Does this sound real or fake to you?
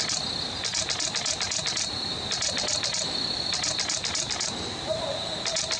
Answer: real